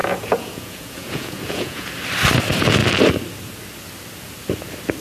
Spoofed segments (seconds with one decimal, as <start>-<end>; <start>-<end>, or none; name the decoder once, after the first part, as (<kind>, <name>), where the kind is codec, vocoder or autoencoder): 0.0-1.9 (vocoder, Vocos)